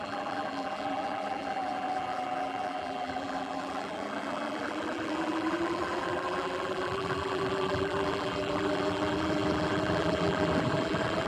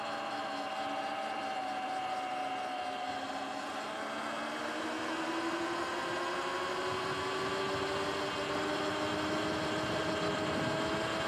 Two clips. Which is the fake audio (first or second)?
first